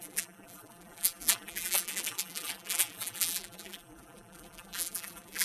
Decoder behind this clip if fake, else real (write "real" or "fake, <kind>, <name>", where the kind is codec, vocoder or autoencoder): fake, vocoder, BigVGAN v2